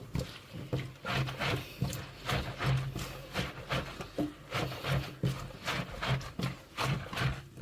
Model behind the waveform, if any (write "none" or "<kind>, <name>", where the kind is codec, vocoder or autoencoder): none